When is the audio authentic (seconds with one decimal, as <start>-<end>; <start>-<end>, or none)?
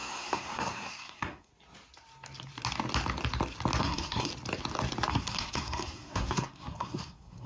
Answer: 1.5-3.8; 4.3-5.1